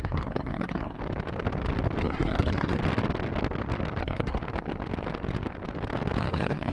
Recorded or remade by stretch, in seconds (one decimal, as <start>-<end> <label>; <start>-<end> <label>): 0.0-1.0 remade; 1.0-2.0 recorded; 2.0-2.8 remade; 2.8-4.0 recorded; 4.0-4.4 remade; 4.4-6.2 recorded; 6.2-6.7 remade